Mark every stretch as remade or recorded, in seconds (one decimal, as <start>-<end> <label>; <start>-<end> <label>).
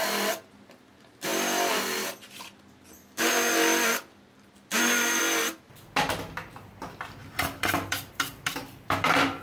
0.0-1.3 recorded; 1.3-5.2 remade; 5.2-7.2 recorded; 7.2-9.4 remade